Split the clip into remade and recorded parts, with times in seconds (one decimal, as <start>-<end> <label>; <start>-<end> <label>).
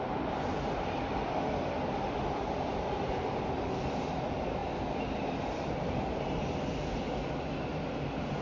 0.0-8.4 recorded